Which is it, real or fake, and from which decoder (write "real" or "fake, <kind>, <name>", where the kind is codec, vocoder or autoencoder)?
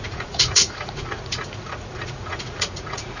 fake, vocoder, Vocos